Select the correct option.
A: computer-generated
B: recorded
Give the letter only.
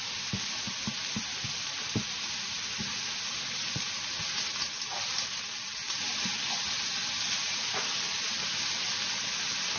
B